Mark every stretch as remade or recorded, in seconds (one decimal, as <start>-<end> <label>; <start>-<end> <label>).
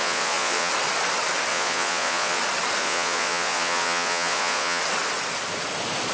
0.0-0.7 remade; 0.7-1.5 recorded; 1.5-2.4 remade; 2.4-2.8 recorded; 2.8-4.8 remade; 4.8-6.1 recorded